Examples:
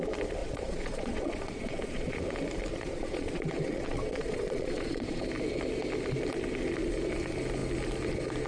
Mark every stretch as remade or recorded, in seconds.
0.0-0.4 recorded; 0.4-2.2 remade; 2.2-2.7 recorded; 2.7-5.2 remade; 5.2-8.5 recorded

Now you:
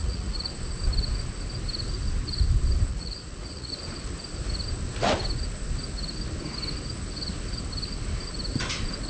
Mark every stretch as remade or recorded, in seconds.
0.0-0.5 remade; 0.5-2.9 recorded; 2.9-3.7 remade; 3.7-9.1 recorded

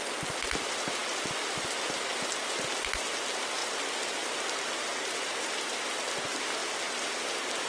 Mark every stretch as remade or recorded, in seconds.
0.0-7.7 recorded

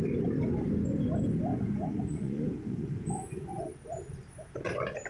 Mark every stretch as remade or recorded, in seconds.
0.0-1.5 recorded; 1.5-3.7 remade; 3.7-5.1 recorded